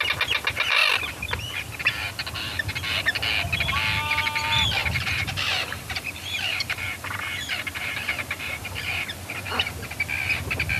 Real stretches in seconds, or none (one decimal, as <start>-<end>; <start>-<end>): 0.0-4.8; 9.7-10.8